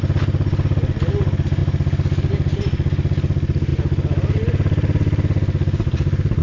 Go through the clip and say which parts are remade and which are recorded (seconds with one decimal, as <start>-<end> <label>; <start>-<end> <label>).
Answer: 0.0-6.4 recorded